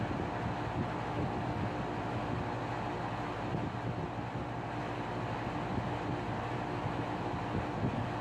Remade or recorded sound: recorded